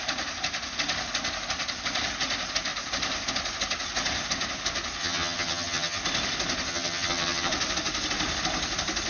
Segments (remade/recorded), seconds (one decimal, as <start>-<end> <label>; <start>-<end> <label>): 0.0-5.0 recorded; 5.0-6.0 remade; 6.0-6.7 recorded; 6.7-7.5 remade; 7.5-9.1 recorded